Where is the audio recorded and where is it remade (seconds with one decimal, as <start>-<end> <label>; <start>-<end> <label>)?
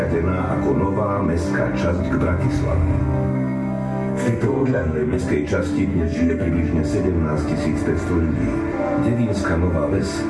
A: 0.0-3.0 recorded; 3.0-5.2 remade; 5.2-5.9 recorded; 5.9-6.5 remade; 6.5-10.3 recorded